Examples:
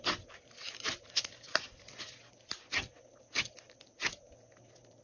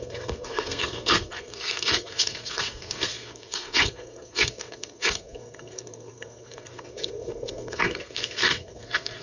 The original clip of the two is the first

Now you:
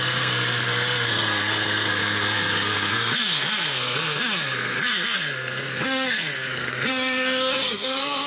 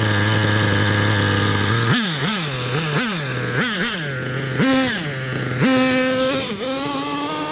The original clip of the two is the second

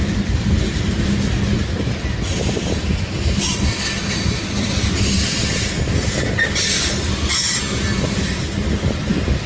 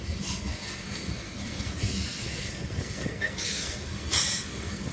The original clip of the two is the first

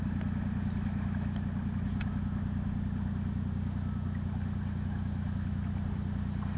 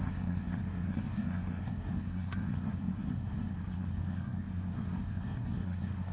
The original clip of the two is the first